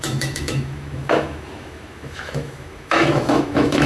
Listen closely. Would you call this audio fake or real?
fake